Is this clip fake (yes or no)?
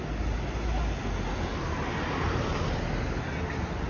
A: no